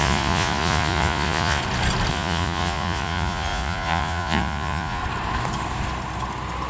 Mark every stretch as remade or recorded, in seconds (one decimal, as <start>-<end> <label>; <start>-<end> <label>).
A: 0.0-1.6 remade; 1.6-2.1 recorded; 2.1-5.0 remade; 5.0-6.7 recorded